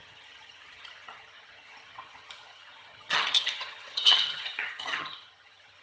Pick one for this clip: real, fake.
fake